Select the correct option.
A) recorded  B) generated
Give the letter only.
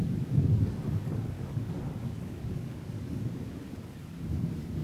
B